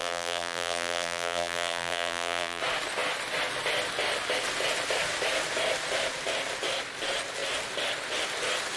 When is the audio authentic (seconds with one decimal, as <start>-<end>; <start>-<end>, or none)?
2.6-8.8